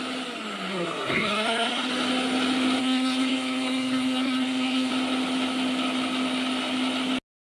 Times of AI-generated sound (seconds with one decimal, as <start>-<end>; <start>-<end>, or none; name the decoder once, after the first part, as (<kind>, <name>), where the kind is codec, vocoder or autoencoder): 0.7-1.9 (codec, SNAC); 2.8-4.9